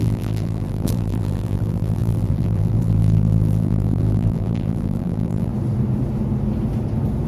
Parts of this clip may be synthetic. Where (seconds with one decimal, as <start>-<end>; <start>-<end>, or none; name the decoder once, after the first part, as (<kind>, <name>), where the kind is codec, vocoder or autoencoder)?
0.0-5.5 (vocoder, BigVGAN v2)